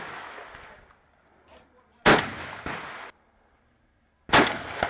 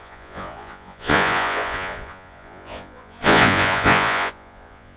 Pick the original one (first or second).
first